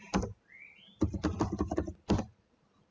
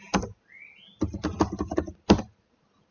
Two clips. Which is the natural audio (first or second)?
second